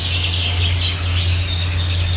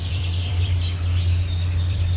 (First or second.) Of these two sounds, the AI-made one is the second